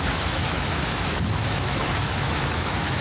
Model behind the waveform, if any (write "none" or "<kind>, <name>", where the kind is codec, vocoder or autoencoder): autoencoder, DAC-VAE